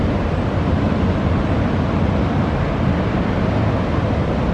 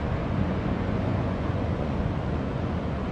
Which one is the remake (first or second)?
second